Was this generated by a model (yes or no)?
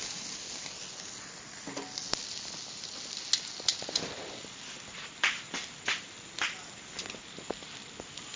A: no